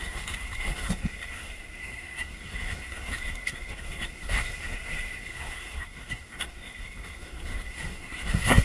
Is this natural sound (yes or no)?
no